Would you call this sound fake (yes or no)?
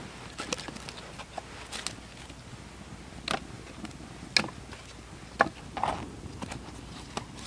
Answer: no